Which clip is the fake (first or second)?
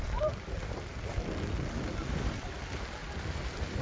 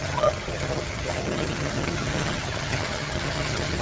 second